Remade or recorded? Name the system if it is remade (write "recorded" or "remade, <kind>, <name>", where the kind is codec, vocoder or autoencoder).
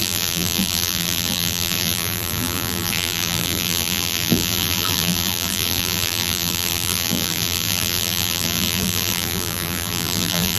remade, vocoder, BigVGAN v2